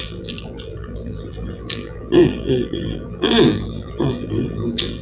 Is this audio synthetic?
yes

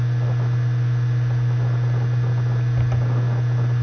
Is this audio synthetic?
no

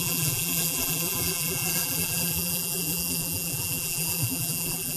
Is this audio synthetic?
yes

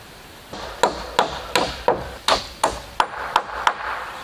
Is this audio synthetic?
no